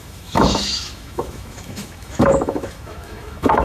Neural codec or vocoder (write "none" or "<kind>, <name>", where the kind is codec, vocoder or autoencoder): autoencoder, DAC-VAE